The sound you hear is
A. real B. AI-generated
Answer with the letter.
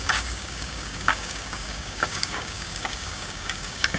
B